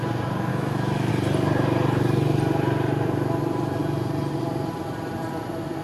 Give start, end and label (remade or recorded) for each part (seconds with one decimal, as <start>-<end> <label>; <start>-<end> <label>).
0.0-0.5 recorded; 0.5-1.1 remade; 1.1-5.8 recorded